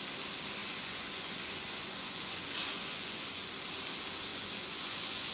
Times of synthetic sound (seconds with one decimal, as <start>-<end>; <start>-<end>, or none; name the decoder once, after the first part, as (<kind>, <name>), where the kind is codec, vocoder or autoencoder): 0.6-3.5 (vocoder, Vocos); 4.3-5.3